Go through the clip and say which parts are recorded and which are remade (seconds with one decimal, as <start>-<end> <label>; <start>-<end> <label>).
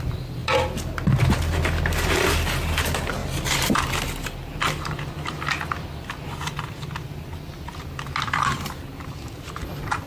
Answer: 0.0-3.2 recorded; 3.2-5.0 remade; 5.0-10.1 recorded